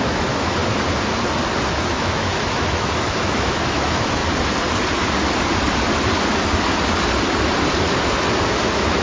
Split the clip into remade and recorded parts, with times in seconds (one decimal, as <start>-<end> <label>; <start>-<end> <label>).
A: 0.0-0.6 remade; 0.6-1.7 recorded; 1.7-4.2 remade; 4.2-8.5 recorded; 8.5-9.0 remade